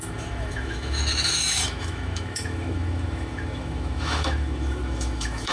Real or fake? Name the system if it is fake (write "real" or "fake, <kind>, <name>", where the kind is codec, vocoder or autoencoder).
fake, autoencoder, DAC-VAE